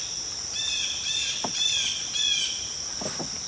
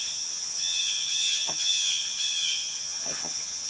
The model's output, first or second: second